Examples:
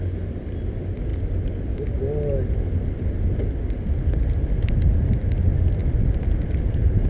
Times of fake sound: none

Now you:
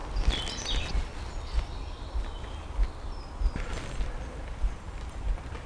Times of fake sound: none

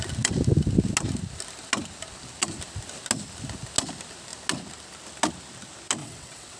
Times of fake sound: 6.0-6.6

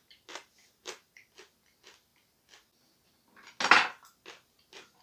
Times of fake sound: 0.6-1.1

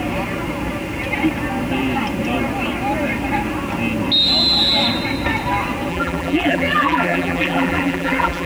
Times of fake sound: 5.9-8.5

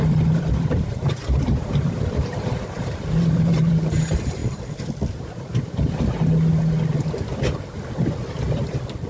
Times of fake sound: 0.0-4.4